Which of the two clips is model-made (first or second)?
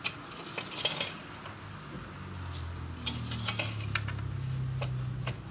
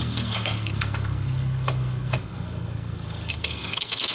second